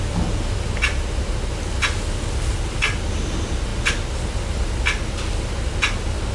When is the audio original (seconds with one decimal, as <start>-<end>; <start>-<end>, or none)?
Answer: 0.0-6.3